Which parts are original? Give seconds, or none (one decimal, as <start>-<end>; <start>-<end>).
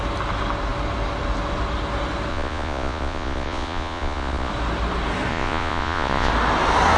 0.0-2.3; 4.5-5.3; 6.3-7.0